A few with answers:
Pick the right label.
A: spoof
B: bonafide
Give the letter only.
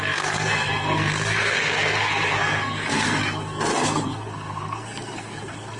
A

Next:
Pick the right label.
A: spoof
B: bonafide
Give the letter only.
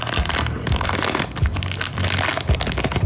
B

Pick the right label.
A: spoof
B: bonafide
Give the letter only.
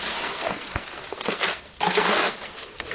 A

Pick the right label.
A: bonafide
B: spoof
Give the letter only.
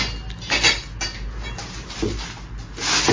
A